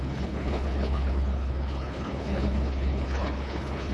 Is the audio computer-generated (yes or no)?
yes